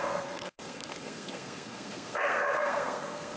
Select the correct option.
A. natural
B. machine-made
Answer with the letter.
B